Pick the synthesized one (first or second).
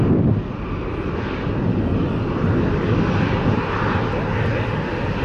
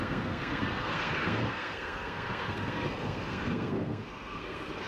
second